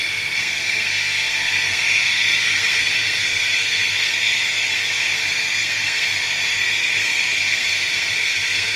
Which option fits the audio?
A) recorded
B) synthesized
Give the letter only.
B